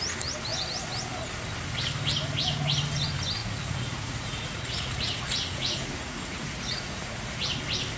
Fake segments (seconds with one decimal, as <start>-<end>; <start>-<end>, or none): 3.4-7.1